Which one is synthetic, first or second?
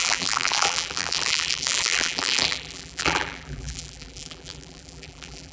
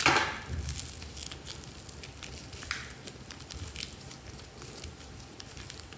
first